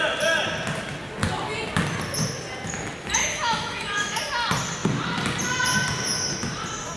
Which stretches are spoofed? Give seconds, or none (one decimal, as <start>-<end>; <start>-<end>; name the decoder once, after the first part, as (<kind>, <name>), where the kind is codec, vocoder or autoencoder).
3.2-4.2 (autoencoder, DAC-VAE)

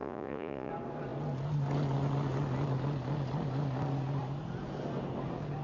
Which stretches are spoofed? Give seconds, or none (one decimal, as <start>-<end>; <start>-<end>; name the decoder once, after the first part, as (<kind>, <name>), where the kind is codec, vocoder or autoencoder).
0.0-0.7 (vocoder, Vocos)

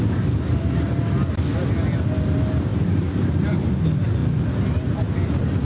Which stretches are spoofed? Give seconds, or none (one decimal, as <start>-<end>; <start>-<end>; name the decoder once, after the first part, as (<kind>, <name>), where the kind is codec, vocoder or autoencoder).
2.7-3.8 (vocoder, BigVGAN v2)

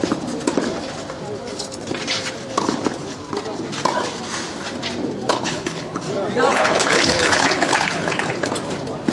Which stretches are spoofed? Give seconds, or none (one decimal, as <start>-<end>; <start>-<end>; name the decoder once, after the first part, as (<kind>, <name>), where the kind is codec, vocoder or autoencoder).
5.3-6.0 (codec, HILCodec); 6.5-8.5

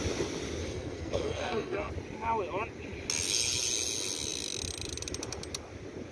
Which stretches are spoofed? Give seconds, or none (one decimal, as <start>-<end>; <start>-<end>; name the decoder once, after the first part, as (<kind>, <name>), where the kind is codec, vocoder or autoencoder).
0.6-1.9 (codec, SNAC)

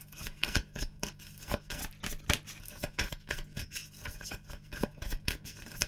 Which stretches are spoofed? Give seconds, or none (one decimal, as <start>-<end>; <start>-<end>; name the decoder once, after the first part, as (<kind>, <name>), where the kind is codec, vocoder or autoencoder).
0.0-1.8 (codec, SNAC); 2.6-5.9